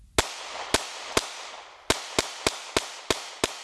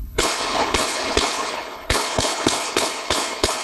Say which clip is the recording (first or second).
first